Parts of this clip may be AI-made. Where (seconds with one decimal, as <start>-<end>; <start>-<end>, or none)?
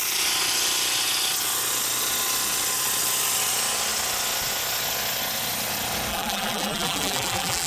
6.1-7.7